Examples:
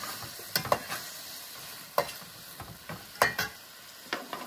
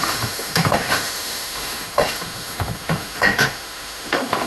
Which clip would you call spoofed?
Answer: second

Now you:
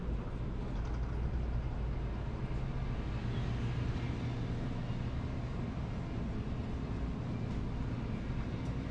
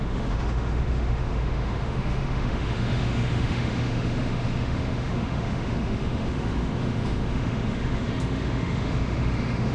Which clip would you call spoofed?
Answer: second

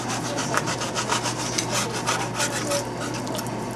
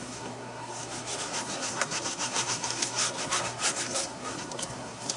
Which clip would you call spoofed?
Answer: second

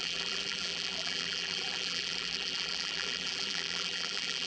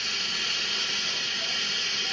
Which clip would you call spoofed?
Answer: first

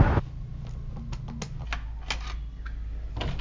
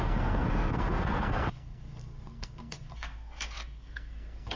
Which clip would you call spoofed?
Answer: second